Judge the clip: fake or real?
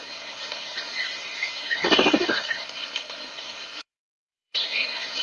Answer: fake